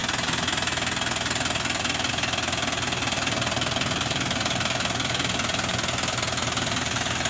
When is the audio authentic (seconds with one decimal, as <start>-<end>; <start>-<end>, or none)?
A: 0.0-7.3